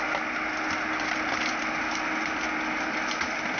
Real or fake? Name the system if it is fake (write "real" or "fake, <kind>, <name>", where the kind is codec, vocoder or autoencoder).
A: real